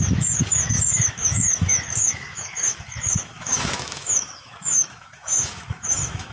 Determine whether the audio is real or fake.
fake